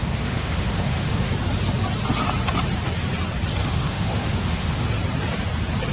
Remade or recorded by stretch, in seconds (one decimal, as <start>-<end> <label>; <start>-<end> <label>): 0.0-1.3 remade; 1.3-3.6 recorded; 3.6-4.9 remade; 4.9-5.9 recorded